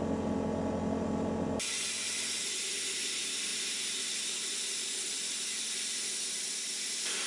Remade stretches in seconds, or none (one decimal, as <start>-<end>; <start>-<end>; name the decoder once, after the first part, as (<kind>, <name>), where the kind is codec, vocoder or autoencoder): none